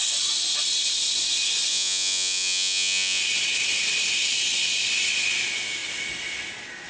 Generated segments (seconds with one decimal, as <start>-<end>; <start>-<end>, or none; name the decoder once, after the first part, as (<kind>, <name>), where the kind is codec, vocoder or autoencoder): 1.7-3.2 (vocoder, Vocos)